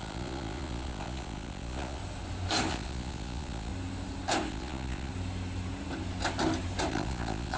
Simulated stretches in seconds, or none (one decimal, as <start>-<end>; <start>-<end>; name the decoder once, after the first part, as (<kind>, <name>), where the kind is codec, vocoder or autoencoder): 0.0-2.0 (vocoder, Vocos); 2.7-3.7; 4.5-5.1; 6.9-7.6